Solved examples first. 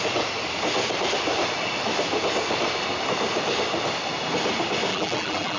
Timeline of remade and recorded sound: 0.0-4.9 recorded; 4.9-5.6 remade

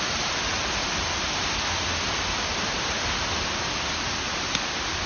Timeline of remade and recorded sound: 0.0-5.1 recorded

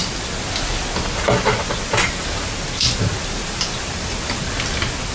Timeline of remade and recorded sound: 0.0-5.1 recorded

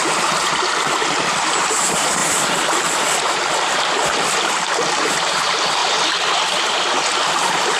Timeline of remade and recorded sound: 0.0-5.8 remade; 5.8-7.3 recorded; 7.3-7.8 remade

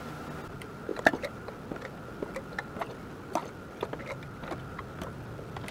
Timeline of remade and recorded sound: 0.0-0.9 recorded; 0.9-1.6 remade; 1.6-5.7 recorded

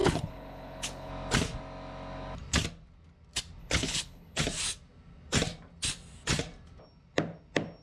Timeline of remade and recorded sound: 0.0-1.1 remade; 1.1-3.6 recorded; 3.6-4.4 remade; 4.4-7.8 recorded